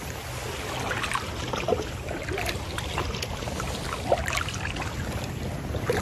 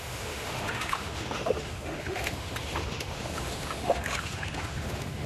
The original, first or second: first